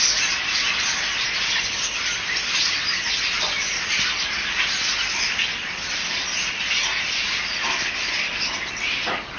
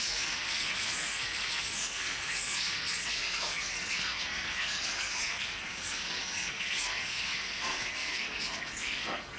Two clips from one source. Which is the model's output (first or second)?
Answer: second